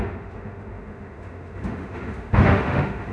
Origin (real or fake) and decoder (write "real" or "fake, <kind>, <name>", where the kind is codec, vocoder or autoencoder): fake, autoencoder, DAC-VAE